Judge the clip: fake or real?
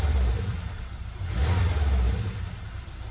fake